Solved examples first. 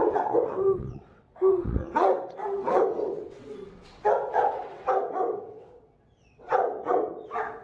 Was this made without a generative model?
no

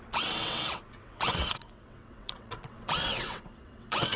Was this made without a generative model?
no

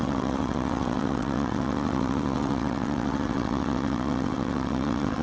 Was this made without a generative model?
no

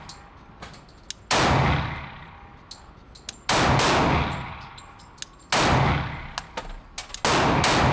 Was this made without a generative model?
yes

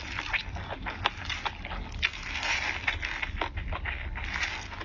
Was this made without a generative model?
yes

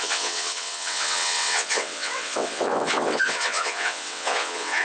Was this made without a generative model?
no